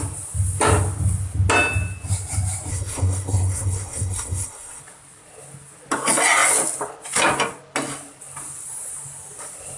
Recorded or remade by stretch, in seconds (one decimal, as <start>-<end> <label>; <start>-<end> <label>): 0.0-2.7 recorded; 2.7-4.8 remade; 4.8-9.8 recorded